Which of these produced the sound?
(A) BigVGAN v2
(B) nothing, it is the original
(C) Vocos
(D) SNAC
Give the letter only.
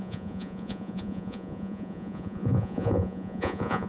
C